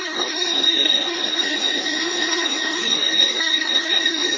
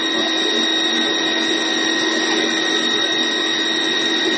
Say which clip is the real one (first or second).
second